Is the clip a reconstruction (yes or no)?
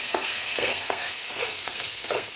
yes